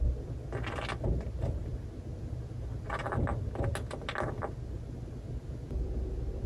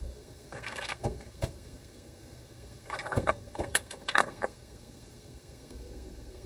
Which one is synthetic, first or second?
second